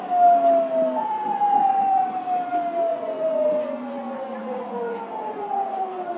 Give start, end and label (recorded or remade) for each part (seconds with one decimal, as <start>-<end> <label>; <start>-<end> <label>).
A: 0.0-1.0 recorded; 1.0-2.1 remade; 2.1-2.9 recorded; 2.9-6.2 remade